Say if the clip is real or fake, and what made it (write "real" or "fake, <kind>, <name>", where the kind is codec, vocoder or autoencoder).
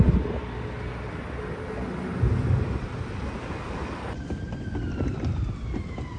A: real